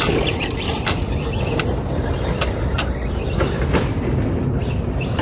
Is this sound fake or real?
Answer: real